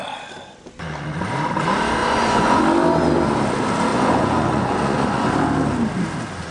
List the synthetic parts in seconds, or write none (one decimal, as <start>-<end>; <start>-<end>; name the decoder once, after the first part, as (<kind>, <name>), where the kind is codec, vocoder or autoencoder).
2.0-2.6 (vocoder, Vocos); 3.9-5.3